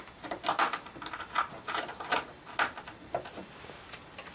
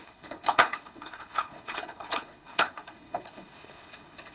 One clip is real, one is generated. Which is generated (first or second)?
second